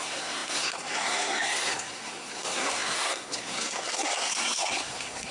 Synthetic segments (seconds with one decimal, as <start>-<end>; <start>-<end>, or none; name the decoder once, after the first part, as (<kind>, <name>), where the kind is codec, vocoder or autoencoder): 0.0-5.3 (codec, SNAC)